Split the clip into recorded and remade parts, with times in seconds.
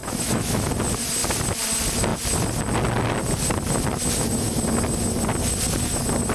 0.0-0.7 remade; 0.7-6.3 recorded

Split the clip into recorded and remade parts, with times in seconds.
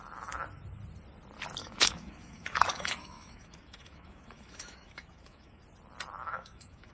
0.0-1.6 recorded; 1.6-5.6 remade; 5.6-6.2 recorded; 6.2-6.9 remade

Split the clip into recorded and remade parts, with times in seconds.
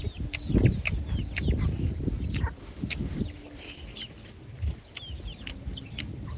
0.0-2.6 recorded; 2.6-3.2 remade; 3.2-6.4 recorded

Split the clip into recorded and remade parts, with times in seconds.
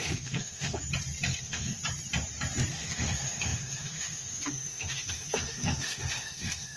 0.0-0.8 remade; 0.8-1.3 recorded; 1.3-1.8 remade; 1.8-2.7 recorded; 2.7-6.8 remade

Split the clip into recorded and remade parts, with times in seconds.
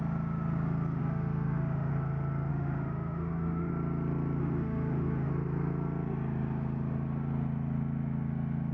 0.0-1.0 recorded; 1.0-1.9 remade; 1.9-2.5 recorded; 2.5-3.7 remade; 3.7-4.4 recorded; 4.4-5.3 remade; 5.3-8.7 recorded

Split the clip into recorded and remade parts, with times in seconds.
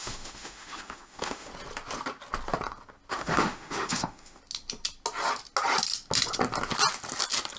0.0-1.5 remade; 1.5-3.1 recorded; 3.1-4.4 remade; 4.4-7.6 recorded